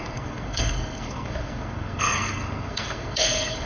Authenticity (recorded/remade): remade